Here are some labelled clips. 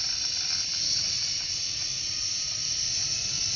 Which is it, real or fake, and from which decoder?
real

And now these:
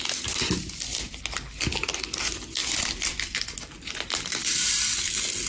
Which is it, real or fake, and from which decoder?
real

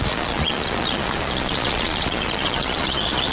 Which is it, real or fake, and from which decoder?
fake, vocoder, Vocos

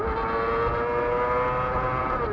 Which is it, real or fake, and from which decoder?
real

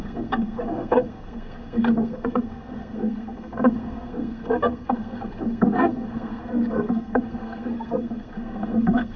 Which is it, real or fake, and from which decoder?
fake, codec, SNAC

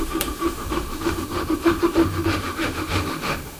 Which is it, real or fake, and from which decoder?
fake, autoencoder, DAC-VAE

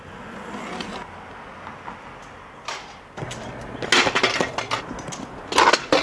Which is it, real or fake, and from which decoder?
real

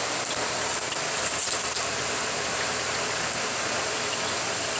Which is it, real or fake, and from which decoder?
real